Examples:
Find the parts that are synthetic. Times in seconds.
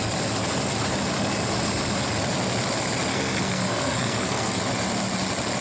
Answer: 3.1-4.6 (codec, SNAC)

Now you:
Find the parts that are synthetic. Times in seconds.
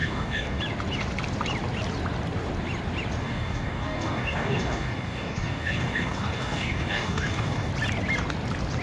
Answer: 0.0-0.6 (codec, DAC); 3.2-7.7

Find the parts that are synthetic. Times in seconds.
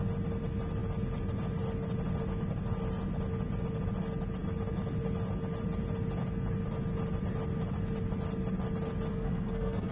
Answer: 9.1-9.9 (codec, SNAC)